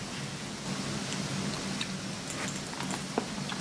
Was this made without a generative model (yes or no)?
yes